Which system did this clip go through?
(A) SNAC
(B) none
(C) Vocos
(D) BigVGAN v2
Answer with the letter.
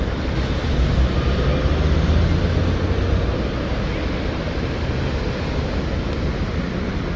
B